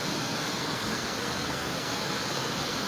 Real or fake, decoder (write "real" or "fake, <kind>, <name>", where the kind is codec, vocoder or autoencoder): fake, codec, SNAC